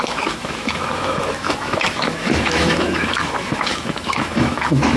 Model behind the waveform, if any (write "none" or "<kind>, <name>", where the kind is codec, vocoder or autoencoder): autoencoder, DAC-VAE